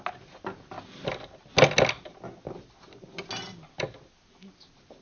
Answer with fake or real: real